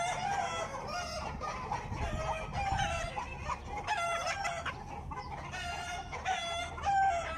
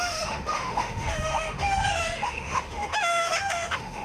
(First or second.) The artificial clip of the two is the second